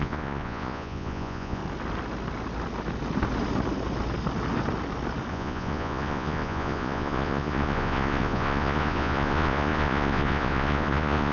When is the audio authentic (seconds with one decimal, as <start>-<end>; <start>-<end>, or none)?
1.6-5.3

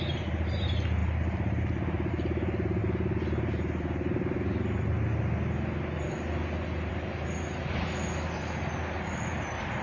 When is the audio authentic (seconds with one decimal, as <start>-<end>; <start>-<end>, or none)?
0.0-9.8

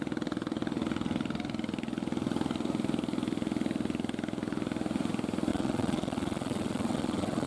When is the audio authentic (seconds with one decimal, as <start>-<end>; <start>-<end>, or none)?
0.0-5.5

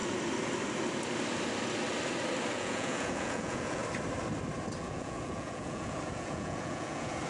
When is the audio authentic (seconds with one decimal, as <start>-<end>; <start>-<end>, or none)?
0.0-2.5; 3.8-4.8

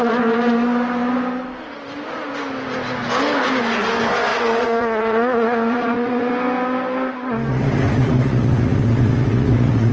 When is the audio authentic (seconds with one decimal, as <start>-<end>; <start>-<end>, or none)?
0.0-4.3; 6.3-7.5

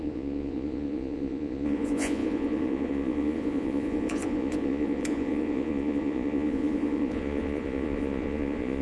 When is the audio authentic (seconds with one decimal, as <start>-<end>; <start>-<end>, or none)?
none